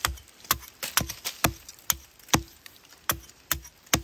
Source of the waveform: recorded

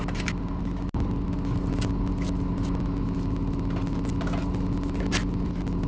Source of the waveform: recorded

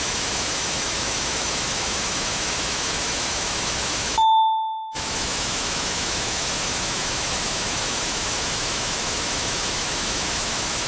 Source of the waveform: remade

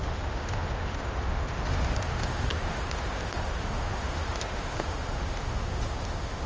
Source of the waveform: remade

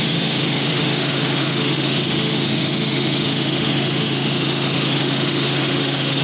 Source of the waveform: remade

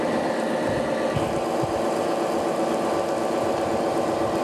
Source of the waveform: recorded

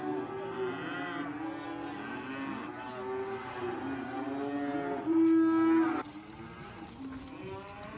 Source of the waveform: recorded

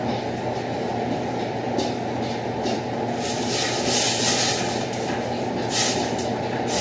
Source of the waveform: recorded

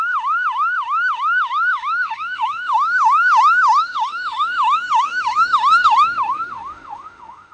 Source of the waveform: remade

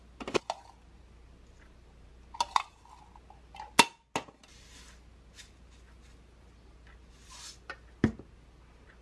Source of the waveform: recorded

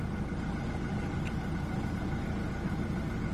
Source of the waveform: recorded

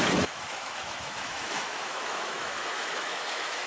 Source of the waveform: remade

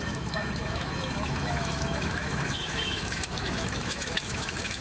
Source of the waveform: remade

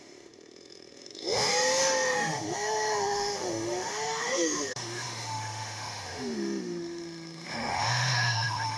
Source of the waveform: remade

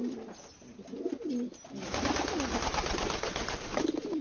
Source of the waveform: recorded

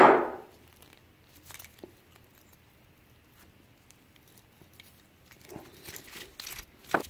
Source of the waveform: recorded